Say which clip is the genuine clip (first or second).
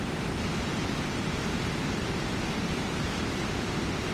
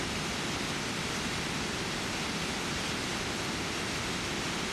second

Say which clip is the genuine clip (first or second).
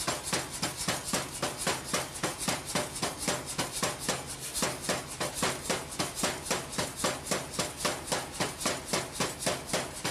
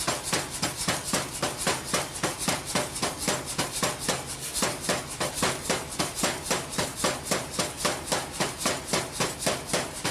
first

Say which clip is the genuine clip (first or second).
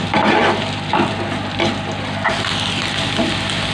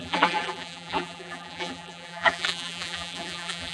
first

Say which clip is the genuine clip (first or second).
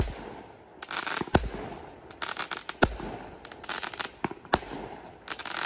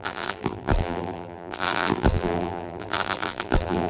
first